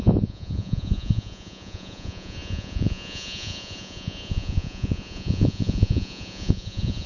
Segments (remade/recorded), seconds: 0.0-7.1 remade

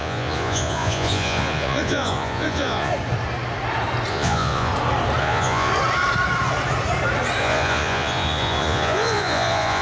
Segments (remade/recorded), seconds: 0.0-2.9 remade; 2.9-4.1 recorded; 4.1-4.7 remade; 4.7-5.2 recorded; 5.2-5.7 remade; 5.7-7.4 recorded; 7.4-9.8 remade

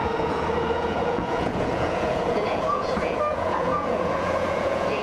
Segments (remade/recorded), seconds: 0.0-5.0 remade

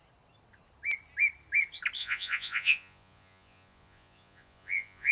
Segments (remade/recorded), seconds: 0.0-2.0 recorded; 2.0-5.1 remade

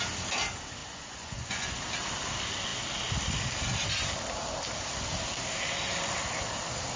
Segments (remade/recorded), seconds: 0.0-0.8 recorded; 0.8-1.8 remade; 1.8-7.0 recorded